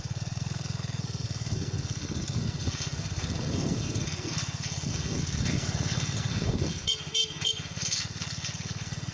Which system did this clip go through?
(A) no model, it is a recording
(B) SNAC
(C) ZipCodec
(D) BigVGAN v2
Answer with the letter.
B